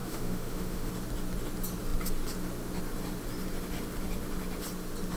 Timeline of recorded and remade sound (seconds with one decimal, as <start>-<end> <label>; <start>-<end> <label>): 0.0-0.9 remade; 0.9-5.2 recorded